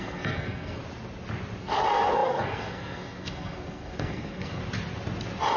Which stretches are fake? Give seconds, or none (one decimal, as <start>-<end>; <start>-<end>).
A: 0.0-0.8; 1.6-4.6